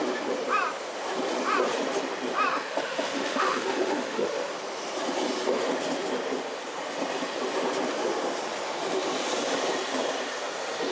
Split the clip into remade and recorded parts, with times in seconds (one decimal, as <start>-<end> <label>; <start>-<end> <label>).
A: 0.0-2.5 recorded; 2.5-4.5 remade; 4.5-10.9 recorded